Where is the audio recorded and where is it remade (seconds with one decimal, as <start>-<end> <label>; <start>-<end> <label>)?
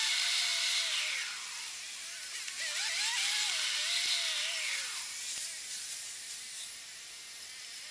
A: 0.0-7.9 recorded